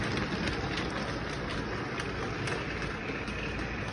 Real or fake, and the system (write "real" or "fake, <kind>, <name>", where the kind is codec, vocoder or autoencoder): real